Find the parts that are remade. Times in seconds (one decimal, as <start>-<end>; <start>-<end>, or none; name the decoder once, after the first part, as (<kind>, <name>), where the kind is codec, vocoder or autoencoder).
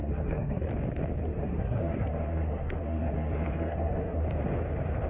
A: 0.0-0.7 (codec, SNAC); 1.2-4.2